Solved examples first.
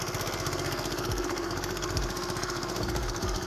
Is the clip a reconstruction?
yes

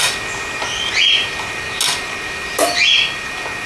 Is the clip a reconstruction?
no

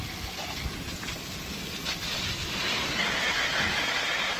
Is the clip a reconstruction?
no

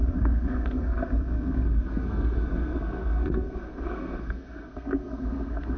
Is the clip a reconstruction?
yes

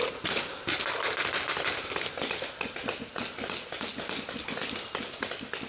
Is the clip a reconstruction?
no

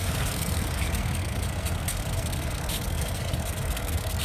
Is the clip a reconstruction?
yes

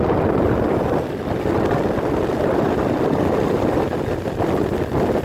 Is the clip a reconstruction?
no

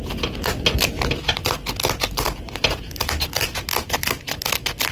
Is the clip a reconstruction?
no